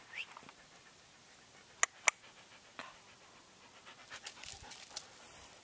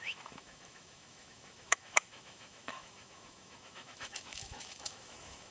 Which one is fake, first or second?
second